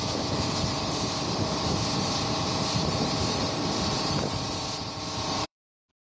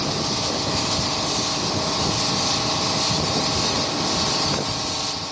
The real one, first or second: second